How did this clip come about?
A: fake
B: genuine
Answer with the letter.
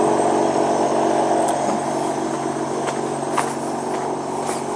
B